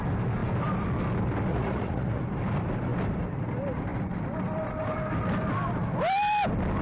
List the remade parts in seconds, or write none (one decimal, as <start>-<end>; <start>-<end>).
1.5-2.2

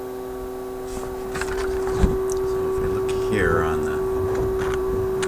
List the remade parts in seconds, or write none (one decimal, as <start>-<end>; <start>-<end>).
none

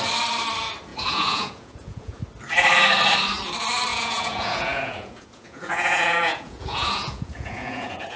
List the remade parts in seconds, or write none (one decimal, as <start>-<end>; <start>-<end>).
0.9-2.2; 3.9-8.2

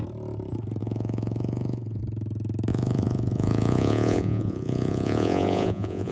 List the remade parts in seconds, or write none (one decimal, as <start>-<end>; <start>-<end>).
0.8-2.0; 2.7-6.1

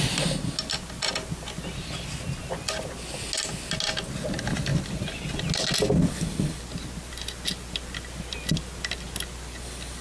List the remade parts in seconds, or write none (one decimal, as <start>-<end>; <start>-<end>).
none

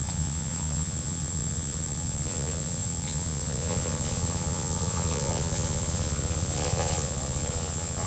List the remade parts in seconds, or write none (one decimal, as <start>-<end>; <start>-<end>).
0.0-8.1